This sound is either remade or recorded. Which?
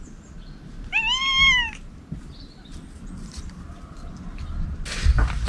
recorded